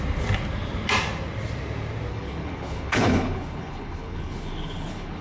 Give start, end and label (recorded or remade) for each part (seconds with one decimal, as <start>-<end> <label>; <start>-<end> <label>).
0.0-2.1 recorded; 2.1-5.2 remade